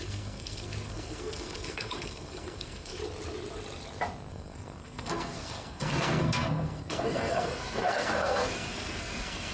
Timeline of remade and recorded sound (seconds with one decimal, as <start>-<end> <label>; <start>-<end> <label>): 0.0-3.0 remade; 3.0-4.3 recorded; 4.3-9.5 remade